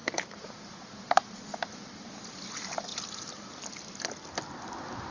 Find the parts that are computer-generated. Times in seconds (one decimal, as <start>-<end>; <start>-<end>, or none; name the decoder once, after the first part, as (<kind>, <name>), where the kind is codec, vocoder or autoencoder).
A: 0.0-0.9 (vocoder, BigVGAN v2); 1.5-2.1